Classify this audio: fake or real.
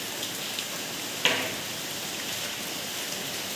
real